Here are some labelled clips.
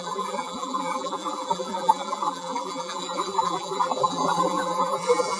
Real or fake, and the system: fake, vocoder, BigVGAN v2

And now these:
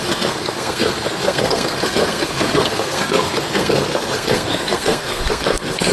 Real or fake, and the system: fake, codec, SNAC